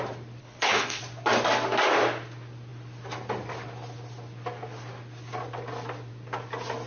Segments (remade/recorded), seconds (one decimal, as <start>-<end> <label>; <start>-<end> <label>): 0.0-0.4 recorded; 0.4-1.0 remade; 1.0-6.9 recorded

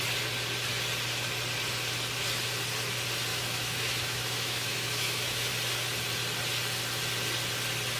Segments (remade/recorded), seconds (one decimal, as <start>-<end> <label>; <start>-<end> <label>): 0.0-3.3 recorded; 3.3-5.5 remade; 5.5-8.0 recorded

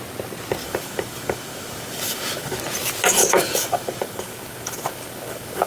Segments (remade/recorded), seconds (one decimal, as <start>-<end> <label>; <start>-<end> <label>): 0.0-0.6 recorded; 0.6-2.6 remade; 2.6-3.2 recorded; 3.2-5.7 remade

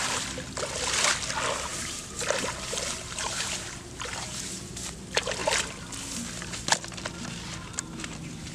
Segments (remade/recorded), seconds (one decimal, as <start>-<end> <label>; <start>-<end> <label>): 0.0-1.7 recorded; 1.7-4.6 remade; 4.6-8.5 recorded

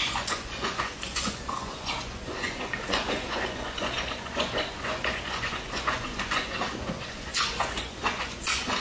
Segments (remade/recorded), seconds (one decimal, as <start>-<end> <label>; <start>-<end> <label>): 0.0-8.8 remade

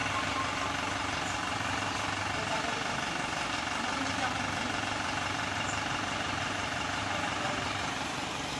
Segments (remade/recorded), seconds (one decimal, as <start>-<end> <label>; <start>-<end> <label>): 0.0-4.8 recorded; 4.8-8.6 remade

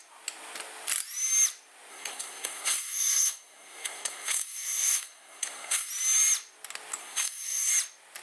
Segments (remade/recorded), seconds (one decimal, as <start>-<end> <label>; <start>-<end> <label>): 0.0-1.9 recorded; 1.9-5.9 remade; 5.9-7.0 recorded; 7.0-7.7 remade; 7.7-8.2 recorded

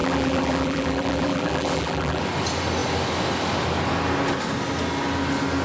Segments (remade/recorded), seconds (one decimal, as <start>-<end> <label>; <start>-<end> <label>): 0.0-2.2 remade; 2.2-5.6 recorded